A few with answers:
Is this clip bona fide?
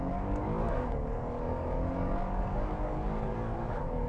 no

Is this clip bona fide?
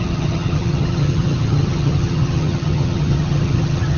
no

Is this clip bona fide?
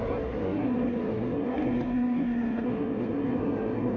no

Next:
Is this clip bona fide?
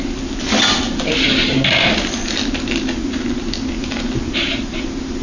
yes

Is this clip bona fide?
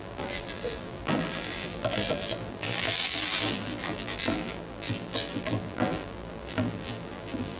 no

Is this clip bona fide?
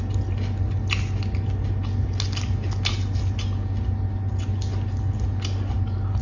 yes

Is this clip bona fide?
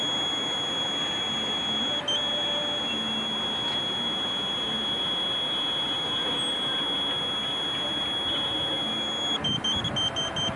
yes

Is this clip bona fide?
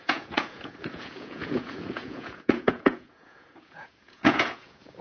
no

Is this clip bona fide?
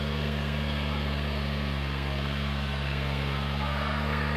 no